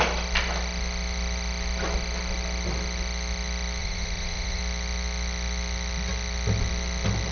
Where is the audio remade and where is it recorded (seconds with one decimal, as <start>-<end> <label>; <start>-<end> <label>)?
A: 0.0-3.8 recorded; 3.8-4.6 remade; 4.6-7.3 recorded